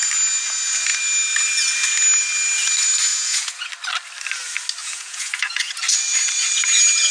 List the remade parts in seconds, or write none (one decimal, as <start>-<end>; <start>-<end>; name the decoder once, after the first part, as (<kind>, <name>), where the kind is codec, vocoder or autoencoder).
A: 3.1-3.7 (vocoder, Vocos); 4.8-5.8